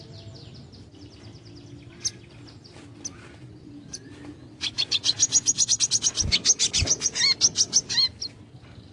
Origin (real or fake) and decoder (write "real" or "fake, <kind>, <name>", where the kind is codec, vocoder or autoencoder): real